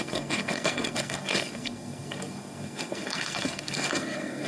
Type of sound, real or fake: fake